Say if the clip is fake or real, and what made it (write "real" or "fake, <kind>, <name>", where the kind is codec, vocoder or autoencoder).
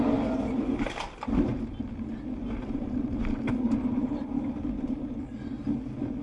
real